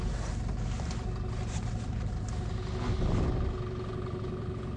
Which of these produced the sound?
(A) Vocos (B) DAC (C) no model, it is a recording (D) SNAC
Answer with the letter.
C